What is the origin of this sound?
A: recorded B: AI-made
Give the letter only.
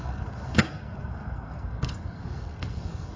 B